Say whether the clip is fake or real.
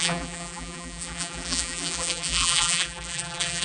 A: fake